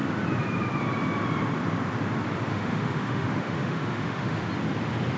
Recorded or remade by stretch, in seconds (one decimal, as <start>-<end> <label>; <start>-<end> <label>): 0.0-2.5 recorded; 2.5-4.5 remade; 4.5-5.2 recorded